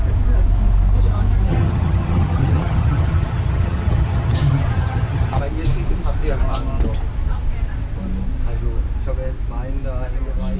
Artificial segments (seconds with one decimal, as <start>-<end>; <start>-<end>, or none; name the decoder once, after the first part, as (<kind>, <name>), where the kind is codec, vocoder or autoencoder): 1.5-5.4 (vocoder, HiFi-GAN)